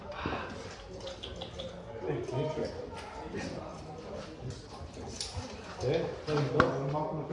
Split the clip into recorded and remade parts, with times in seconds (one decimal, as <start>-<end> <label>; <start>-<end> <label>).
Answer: 0.0-7.3 recorded